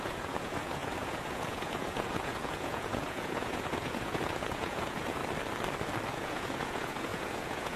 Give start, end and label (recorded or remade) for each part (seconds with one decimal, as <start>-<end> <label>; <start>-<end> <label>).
0.0-5.2 remade; 5.2-6.1 recorded; 6.1-7.8 remade